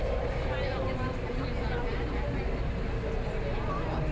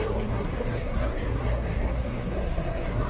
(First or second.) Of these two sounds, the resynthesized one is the second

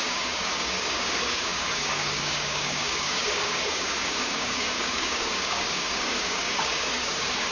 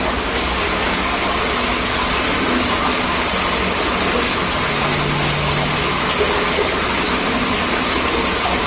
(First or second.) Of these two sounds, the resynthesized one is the first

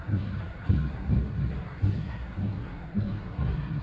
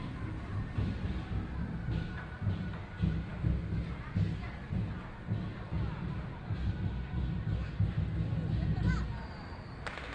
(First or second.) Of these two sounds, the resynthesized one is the first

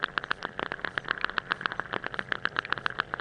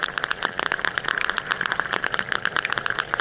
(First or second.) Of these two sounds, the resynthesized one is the second